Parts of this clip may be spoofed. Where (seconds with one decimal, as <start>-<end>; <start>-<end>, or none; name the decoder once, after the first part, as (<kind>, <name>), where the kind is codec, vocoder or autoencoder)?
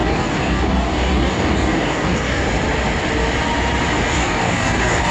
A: 0.0-2.4 (codec, DAC); 3.9-5.1